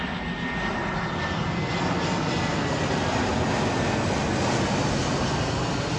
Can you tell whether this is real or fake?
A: real